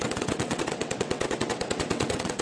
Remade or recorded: remade